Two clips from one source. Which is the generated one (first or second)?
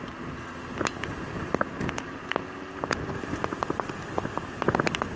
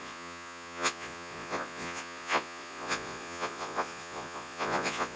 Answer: second